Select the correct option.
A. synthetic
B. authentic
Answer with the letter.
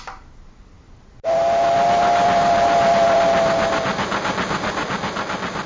B